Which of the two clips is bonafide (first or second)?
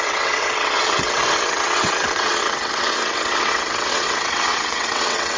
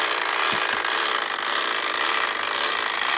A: second